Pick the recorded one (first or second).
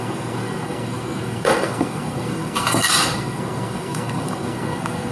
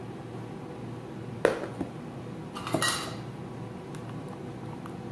second